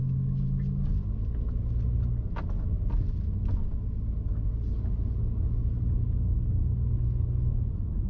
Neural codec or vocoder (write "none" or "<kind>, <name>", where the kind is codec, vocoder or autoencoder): none